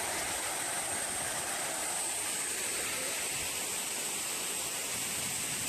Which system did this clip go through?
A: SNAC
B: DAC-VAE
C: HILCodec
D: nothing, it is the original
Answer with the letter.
D